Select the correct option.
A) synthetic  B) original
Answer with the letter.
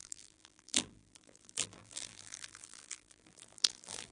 A